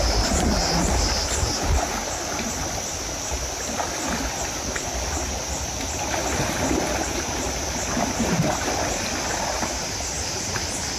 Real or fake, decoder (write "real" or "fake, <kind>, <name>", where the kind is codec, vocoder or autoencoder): real